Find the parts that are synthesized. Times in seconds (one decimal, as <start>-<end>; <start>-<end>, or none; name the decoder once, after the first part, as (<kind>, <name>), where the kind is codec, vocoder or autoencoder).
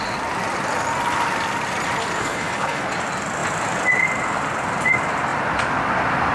2.2-2.8 (codec, HILCodec)